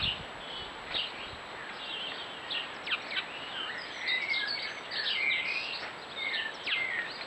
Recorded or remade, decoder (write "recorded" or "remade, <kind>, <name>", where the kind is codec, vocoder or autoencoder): recorded